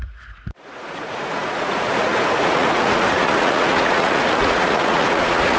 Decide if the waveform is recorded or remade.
remade